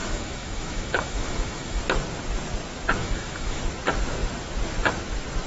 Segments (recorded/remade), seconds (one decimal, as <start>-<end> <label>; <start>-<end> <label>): 0.0-1.8 remade; 1.8-3.0 recorded; 3.0-3.6 remade; 3.6-5.5 recorded